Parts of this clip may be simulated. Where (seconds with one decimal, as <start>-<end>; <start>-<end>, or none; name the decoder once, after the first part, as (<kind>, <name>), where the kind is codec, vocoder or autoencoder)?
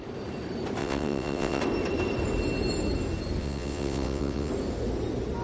0.8-1.6 (vocoder, WaveNeXt); 3.4-4.5